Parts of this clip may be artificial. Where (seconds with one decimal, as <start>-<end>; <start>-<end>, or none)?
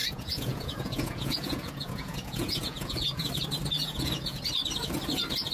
0.0-3.3; 3.8-4.4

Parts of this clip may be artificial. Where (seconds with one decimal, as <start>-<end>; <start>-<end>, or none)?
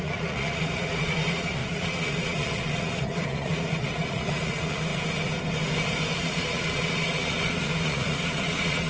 0.0-4.9; 6.2-8.9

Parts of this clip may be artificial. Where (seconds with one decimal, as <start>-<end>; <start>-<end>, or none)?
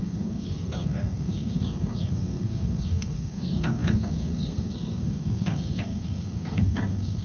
0.0-7.2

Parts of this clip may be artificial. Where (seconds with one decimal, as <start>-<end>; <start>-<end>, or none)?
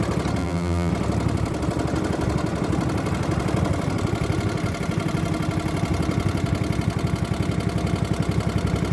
0.4-0.9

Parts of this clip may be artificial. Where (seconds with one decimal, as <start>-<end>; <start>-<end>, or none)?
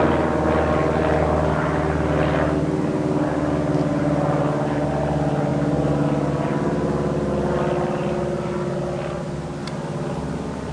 none